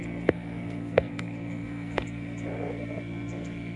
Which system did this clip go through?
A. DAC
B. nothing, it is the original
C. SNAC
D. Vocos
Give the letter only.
C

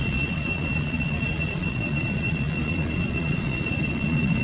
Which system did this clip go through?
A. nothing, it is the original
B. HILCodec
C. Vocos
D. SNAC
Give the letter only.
C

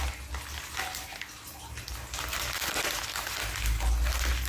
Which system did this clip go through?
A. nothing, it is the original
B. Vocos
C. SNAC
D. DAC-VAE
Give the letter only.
A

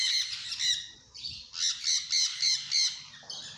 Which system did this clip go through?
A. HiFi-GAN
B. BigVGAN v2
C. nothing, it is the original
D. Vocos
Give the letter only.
C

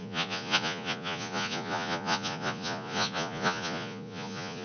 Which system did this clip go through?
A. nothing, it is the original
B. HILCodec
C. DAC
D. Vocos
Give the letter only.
D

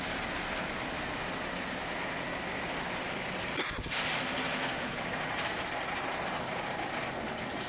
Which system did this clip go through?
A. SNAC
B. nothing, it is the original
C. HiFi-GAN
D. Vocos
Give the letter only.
B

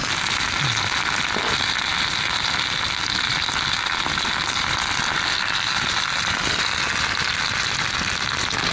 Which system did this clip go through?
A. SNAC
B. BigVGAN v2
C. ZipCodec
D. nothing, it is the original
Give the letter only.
D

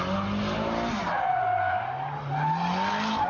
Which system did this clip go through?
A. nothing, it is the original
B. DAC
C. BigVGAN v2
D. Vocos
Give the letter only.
A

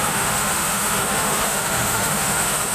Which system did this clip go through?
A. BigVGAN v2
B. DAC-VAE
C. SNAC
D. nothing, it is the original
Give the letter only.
B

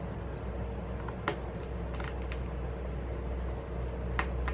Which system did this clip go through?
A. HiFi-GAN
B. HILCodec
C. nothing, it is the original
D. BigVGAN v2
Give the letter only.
C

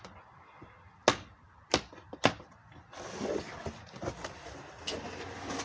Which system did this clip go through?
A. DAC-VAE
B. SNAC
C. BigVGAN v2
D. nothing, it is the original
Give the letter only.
D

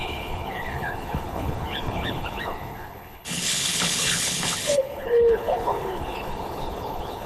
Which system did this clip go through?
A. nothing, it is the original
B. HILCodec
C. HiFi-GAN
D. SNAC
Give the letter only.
B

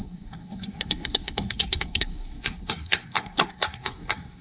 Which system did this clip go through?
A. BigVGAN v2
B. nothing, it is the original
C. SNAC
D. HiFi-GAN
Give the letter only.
C